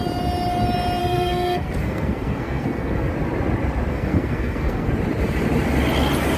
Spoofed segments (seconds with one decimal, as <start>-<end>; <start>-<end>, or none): 1.0-3.1; 3.9-4.9